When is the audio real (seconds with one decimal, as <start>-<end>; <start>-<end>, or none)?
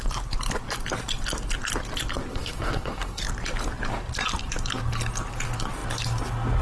0.0-2.3; 3.2-6.6